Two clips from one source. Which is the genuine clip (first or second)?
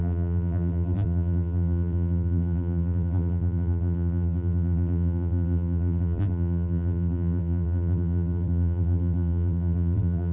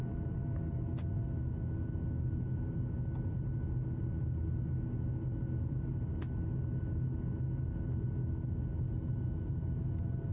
second